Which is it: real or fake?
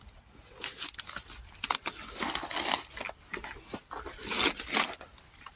real